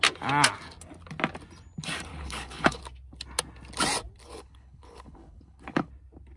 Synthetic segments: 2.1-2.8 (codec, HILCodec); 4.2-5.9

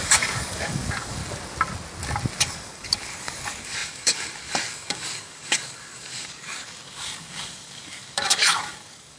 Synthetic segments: 0.0-1.2 (codec, DAC); 2.4-9.2